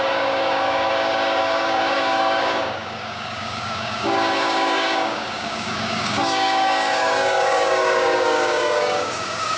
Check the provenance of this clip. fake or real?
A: fake